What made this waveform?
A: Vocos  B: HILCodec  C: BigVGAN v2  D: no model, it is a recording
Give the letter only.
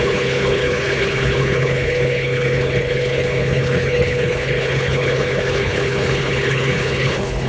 B